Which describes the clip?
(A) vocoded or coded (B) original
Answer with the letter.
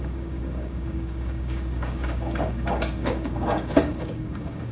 A